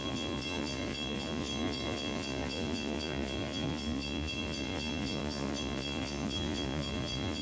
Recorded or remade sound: remade